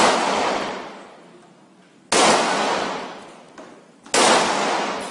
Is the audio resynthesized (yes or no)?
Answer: no